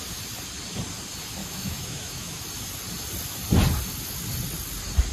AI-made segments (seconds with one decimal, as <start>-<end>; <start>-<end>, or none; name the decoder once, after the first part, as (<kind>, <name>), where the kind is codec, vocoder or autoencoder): 1.4-2.4 (autoencoder, DAC-VAE)